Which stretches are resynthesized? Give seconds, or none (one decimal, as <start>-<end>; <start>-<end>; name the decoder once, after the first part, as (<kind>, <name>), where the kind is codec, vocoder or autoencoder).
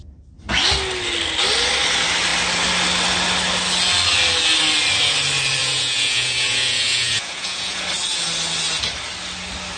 5.6-7.8 (vocoder, Vocos)